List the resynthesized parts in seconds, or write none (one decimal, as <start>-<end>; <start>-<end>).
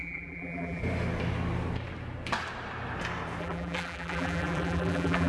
0.0-0.8; 3.4-5.3